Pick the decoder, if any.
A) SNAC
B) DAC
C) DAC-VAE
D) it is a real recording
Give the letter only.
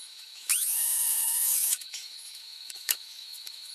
C